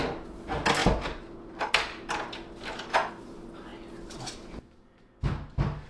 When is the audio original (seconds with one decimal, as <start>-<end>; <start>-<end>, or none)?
0.0-5.9